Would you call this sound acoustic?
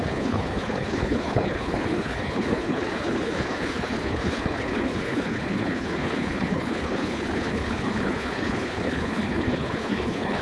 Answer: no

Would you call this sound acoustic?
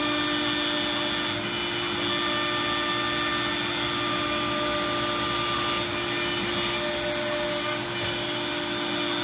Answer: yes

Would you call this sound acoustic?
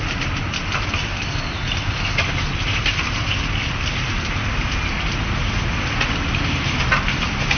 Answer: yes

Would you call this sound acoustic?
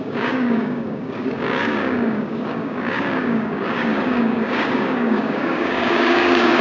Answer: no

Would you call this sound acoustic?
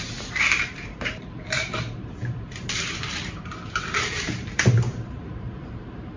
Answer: no